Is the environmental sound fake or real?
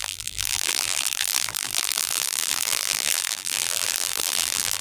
fake